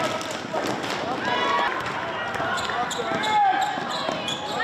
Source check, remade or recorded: recorded